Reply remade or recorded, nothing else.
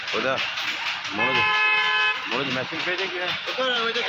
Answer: recorded